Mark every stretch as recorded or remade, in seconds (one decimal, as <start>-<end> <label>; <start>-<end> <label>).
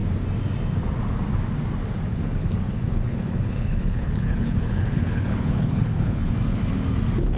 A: 0.0-2.1 recorded; 2.1-6.3 remade; 6.3-7.4 recorded